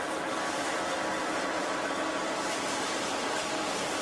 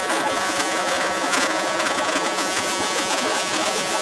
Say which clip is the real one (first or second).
first